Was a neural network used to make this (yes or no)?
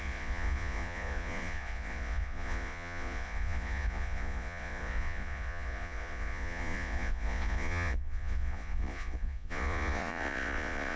yes